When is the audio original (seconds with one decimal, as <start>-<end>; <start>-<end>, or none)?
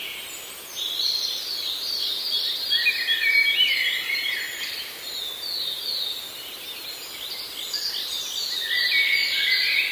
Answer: 4.7-9.9